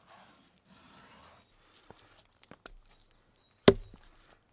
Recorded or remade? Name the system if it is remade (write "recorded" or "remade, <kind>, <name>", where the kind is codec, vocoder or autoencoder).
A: recorded